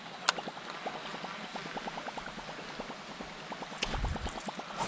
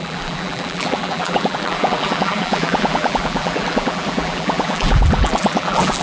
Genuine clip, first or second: first